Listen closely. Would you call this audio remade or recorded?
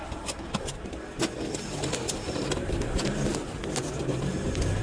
recorded